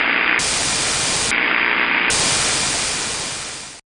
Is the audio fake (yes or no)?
no